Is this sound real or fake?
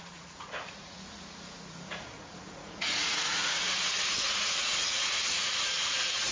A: fake